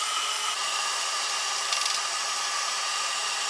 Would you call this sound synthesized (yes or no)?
yes